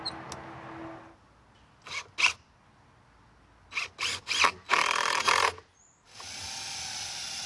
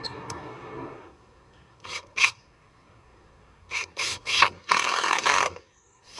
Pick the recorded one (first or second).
first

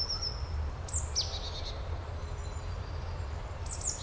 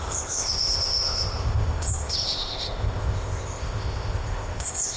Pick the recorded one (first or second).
first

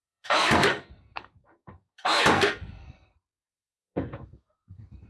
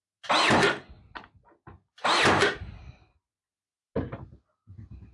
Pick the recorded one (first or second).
second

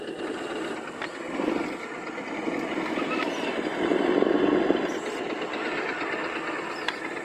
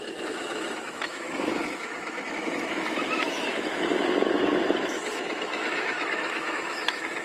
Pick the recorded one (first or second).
first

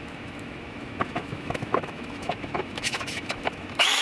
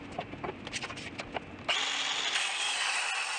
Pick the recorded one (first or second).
second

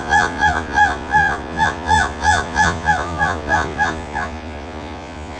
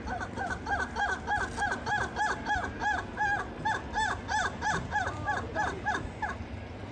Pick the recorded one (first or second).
second